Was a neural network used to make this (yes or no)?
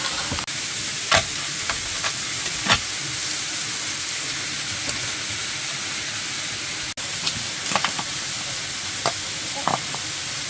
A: no